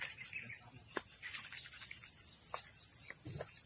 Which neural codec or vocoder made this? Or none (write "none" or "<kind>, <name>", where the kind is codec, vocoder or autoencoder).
none